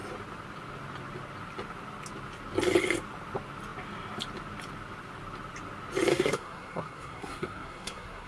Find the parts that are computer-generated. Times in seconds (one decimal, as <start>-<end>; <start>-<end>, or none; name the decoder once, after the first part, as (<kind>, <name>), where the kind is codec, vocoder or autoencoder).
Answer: 6.1-8.3 (codec, SNAC)